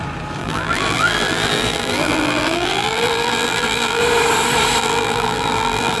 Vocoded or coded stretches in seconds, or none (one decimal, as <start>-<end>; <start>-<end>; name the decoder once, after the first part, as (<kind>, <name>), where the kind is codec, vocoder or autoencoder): 0.4-4.0 (vocoder, BigVGAN v2); 4.8-6.0